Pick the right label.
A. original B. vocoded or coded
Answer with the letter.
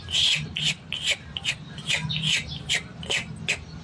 A